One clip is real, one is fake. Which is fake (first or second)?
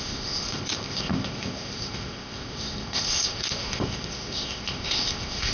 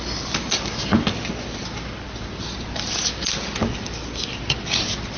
first